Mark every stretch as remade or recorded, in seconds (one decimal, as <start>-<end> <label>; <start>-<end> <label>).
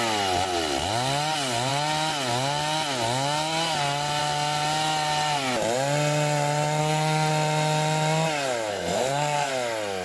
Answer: 0.0-6.8 recorded; 6.8-7.3 remade; 7.3-8.7 recorded; 8.7-9.5 remade; 9.5-10.0 recorded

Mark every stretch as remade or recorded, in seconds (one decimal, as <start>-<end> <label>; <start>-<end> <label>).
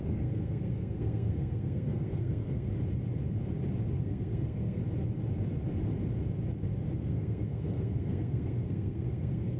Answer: 0.0-2.7 remade; 2.7-4.0 recorded; 4.0-4.8 remade; 4.8-7.0 recorded; 7.0-9.6 remade